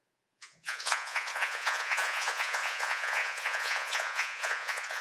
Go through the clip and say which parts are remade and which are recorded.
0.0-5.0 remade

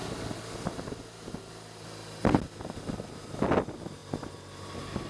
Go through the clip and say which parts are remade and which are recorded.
0.0-3.1 recorded; 3.1-5.1 remade

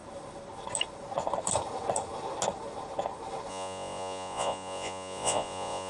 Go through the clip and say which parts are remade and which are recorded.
0.0-3.5 recorded; 3.5-5.9 remade

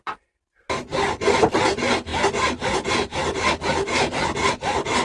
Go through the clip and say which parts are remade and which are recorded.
0.0-0.9 recorded; 0.9-1.6 remade; 1.6-5.0 recorded

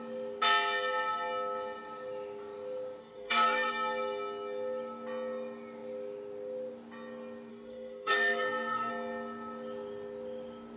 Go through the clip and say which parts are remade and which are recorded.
0.0-3.0 recorded; 3.0-3.7 remade; 3.7-7.5 recorded; 7.5-8.9 remade; 8.9-10.8 recorded

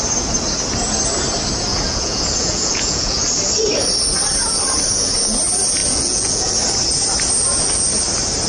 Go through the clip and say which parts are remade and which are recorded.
0.0-1.7 recorded; 1.7-3.2 remade; 3.2-5.8 recorded; 5.8-6.5 remade; 6.5-8.5 recorded